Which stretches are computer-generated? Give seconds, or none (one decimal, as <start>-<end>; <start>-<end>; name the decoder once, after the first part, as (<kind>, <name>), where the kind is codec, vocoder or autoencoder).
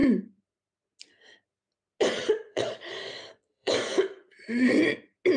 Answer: 2.2-3.7 (vocoder, Vocos)